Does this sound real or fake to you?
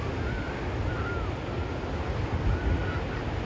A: real